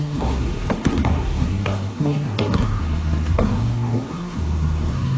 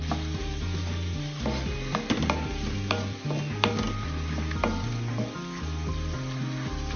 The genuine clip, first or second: second